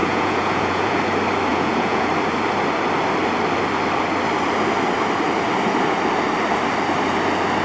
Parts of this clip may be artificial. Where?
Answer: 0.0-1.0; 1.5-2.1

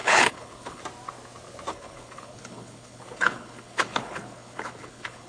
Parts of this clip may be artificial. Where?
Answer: 0.0-0.8; 1.7-5.3

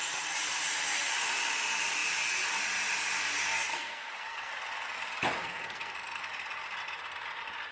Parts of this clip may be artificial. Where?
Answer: 3.7-4.5; 5.4-6.3

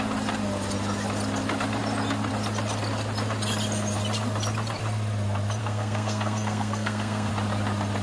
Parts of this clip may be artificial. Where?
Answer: 5.6-7.3